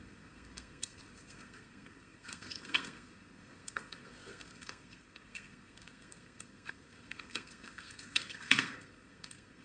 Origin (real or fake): fake